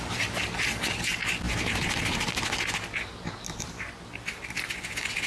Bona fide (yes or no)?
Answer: yes